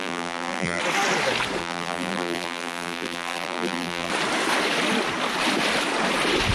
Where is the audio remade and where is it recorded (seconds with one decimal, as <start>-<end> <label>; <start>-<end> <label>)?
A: 0.0-0.8 remade; 0.8-1.6 recorded; 1.6-4.1 remade; 4.1-6.5 recorded